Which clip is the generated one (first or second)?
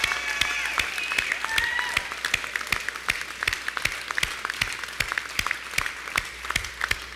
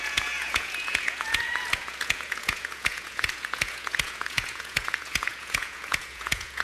second